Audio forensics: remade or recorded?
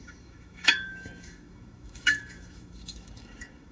remade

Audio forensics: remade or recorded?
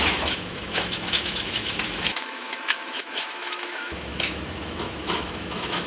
remade